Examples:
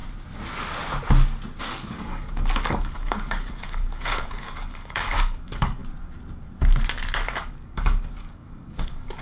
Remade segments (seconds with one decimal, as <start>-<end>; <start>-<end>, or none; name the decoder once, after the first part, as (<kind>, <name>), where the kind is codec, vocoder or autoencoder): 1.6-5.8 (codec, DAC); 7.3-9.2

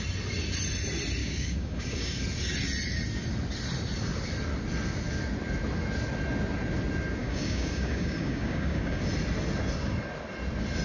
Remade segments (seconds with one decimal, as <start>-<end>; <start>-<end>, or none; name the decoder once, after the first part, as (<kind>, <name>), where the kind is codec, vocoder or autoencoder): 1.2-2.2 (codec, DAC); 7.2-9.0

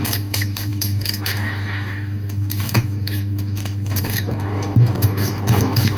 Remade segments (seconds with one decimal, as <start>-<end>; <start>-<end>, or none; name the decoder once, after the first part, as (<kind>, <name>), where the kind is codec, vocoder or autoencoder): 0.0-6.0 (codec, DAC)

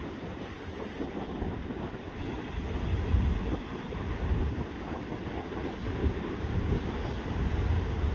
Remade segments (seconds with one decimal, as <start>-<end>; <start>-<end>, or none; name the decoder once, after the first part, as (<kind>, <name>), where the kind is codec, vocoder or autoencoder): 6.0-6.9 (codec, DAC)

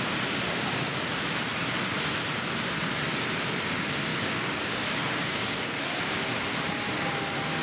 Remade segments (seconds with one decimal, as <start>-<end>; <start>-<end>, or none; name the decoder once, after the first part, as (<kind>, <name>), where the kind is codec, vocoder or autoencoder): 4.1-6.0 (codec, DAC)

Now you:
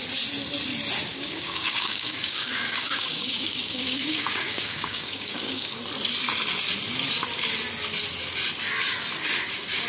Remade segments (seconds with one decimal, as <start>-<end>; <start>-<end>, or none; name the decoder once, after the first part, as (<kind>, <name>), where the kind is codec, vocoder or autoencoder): 1.1-5.7 (codec, DAC)